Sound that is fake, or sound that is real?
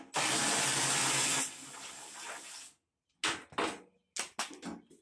real